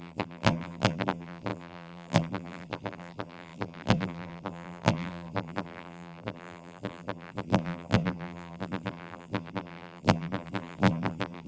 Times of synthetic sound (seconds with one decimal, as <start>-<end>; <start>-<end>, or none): 0.0-11.5